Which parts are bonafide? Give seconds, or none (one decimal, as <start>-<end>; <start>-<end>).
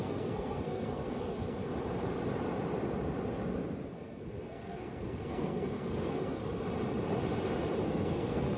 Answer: 1.7-3.9; 6.4-7.8